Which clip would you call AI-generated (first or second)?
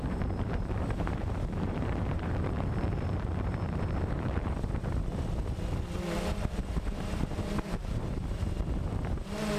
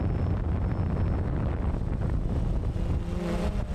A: first